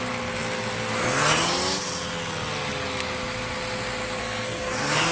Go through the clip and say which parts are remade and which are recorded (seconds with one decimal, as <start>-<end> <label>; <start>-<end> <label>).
0.0-4.2 recorded; 4.2-5.1 remade